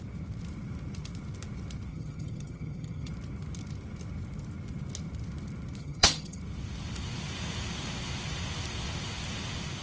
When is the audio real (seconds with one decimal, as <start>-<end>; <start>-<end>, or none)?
0.0-1.9; 3.1-5.8; 6.4-9.8

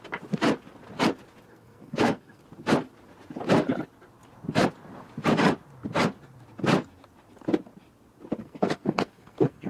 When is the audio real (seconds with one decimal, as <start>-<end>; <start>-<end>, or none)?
0.0-1.5; 2.4-8.4